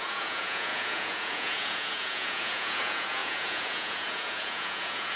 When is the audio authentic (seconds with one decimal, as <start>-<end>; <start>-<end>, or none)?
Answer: none